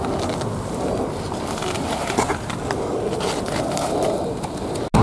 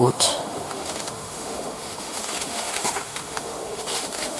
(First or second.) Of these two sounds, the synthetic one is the second